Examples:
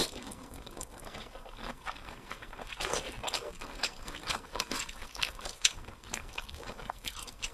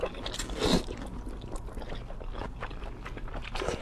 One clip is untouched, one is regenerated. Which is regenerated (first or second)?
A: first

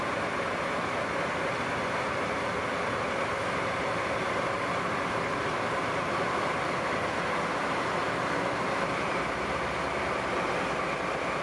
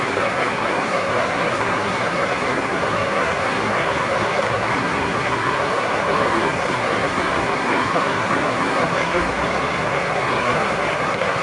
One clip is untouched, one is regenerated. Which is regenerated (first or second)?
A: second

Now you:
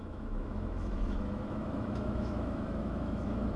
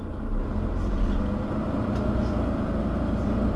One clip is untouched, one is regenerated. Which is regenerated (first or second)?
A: first